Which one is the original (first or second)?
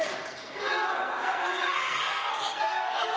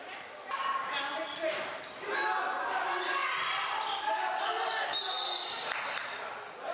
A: second